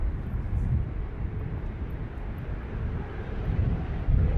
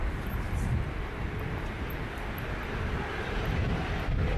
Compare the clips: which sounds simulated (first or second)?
first